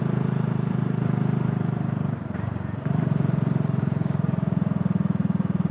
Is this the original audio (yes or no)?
no